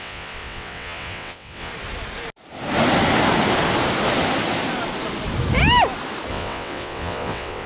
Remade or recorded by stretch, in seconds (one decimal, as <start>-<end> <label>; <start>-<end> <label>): 0.0-1.7 remade; 1.7-6.3 recorded; 6.3-7.7 remade